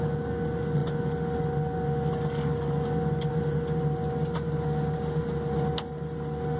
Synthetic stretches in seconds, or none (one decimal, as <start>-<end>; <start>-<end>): none